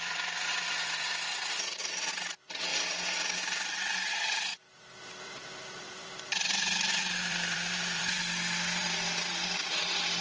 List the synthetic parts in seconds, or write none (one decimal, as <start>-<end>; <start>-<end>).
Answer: 0.0-1.3; 2.1-2.7; 3.4-4.5; 5.2-8.0